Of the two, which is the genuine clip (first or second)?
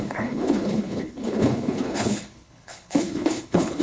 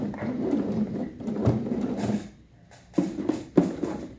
second